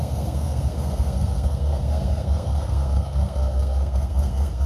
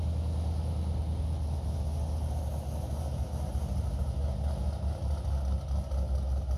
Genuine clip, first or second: second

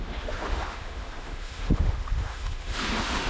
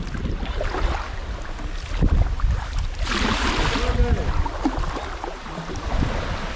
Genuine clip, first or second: second